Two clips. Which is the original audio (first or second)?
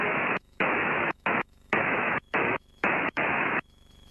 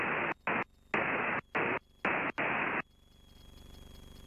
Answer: second